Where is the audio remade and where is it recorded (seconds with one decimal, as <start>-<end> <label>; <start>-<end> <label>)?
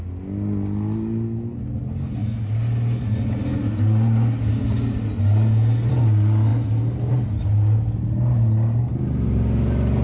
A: 0.0-10.0 recorded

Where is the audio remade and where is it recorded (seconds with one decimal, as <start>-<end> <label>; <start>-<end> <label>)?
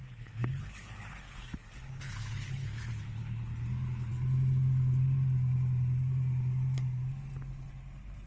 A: 0.0-4.1 remade; 4.1-8.3 recorded